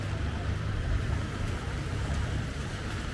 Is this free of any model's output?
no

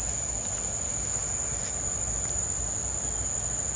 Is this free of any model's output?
yes